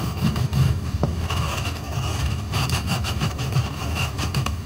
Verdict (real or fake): fake